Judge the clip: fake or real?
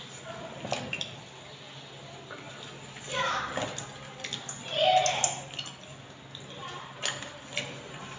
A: real